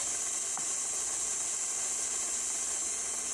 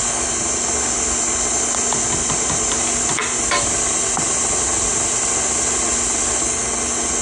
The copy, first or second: first